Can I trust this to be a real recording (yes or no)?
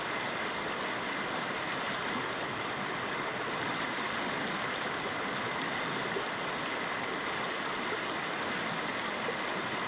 yes